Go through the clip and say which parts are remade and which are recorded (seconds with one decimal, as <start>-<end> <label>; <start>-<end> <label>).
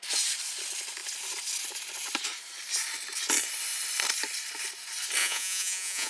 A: 0.0-5.2 recorded; 5.2-6.1 remade